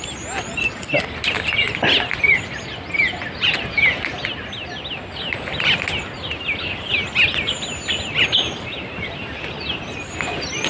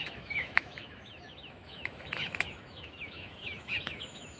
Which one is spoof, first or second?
second